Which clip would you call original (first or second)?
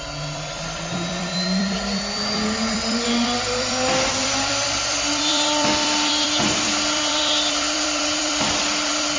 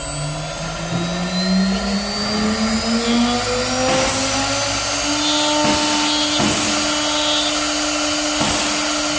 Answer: second